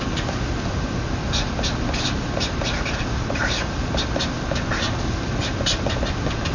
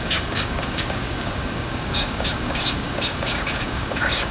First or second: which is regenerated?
second